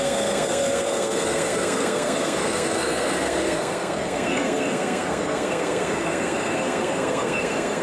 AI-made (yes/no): yes